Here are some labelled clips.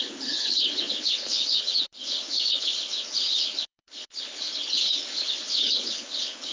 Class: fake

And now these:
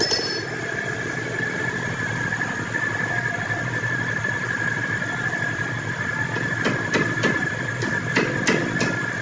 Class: real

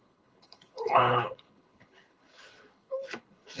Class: fake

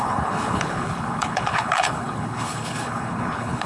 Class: fake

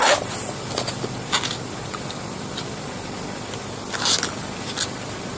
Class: real